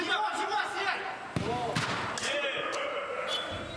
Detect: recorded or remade recorded